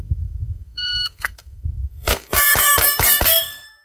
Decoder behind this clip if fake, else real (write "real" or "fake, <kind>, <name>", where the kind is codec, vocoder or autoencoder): fake, codec, SNAC